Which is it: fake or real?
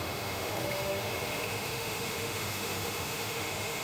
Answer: fake